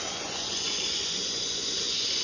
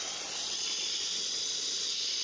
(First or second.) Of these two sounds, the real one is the second